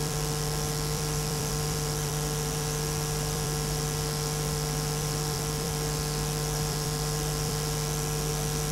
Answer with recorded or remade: remade